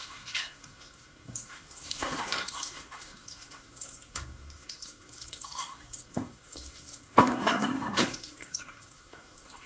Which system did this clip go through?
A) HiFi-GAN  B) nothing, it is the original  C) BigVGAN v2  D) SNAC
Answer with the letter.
D